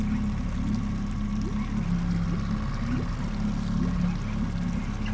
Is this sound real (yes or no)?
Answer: yes